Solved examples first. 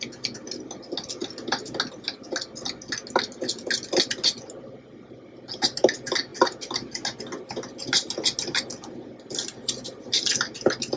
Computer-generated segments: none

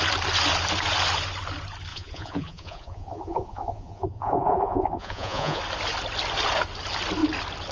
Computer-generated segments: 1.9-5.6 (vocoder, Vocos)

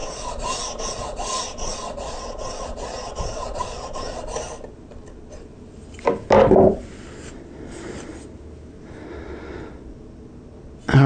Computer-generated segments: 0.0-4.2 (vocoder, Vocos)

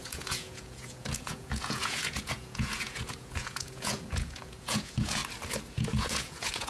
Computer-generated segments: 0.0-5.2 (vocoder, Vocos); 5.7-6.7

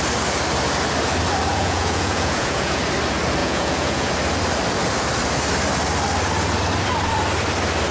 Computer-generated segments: 1.5-2.8 (vocoder, Vocos); 3.4-4.1

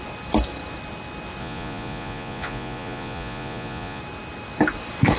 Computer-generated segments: 1.4-4.0 (vocoder, Vocos)